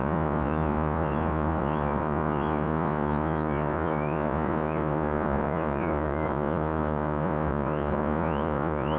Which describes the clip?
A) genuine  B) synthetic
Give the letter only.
B